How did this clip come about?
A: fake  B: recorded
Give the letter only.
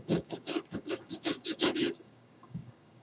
A